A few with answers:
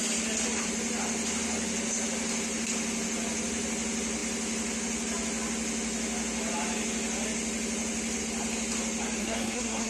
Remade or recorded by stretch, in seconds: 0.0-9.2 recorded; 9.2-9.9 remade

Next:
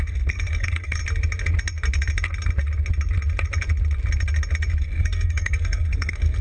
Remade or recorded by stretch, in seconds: 0.0-1.0 remade; 1.0-4.8 recorded; 4.8-6.4 remade